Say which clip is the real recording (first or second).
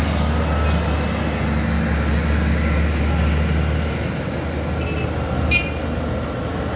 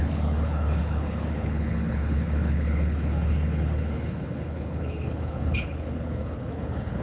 first